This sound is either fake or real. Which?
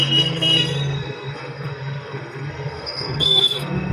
fake